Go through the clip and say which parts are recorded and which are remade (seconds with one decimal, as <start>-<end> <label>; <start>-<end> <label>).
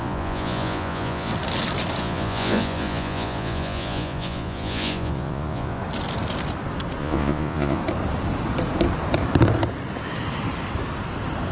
0.0-1.3 remade; 1.3-2.0 recorded; 2.0-5.8 remade; 5.8-7.0 recorded; 7.0-7.8 remade; 7.8-11.5 recorded